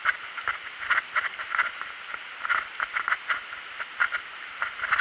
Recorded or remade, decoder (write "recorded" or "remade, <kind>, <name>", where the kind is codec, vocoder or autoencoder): recorded